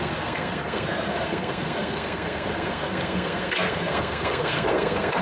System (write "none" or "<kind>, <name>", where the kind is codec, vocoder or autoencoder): codec, SNAC